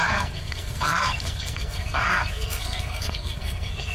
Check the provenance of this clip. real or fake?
fake